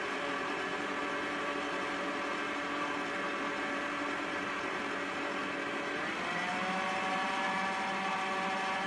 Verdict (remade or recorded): remade